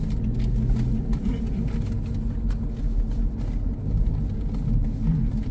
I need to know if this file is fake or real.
real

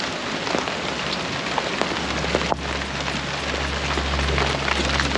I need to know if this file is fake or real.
real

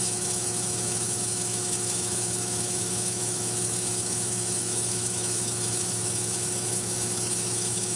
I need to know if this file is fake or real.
fake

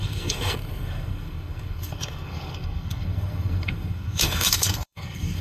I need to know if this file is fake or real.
fake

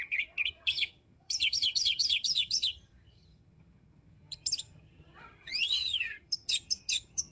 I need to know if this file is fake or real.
fake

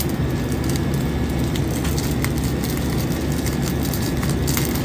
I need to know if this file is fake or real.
real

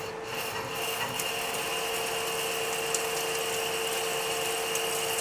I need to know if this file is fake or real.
real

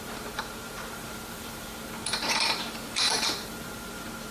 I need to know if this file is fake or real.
fake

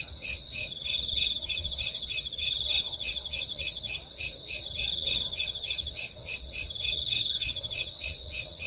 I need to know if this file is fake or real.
fake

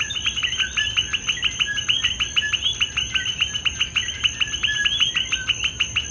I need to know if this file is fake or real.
real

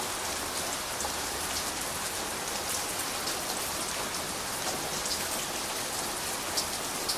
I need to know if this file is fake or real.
real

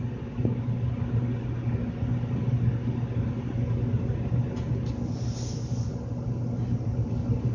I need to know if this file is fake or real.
real